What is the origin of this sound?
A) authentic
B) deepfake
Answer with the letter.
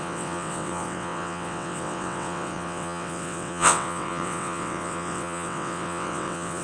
B